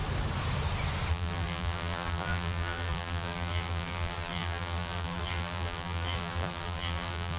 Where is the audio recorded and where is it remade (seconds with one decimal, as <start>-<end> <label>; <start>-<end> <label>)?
0.0-1.1 recorded; 1.1-7.4 remade